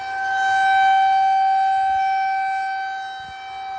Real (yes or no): yes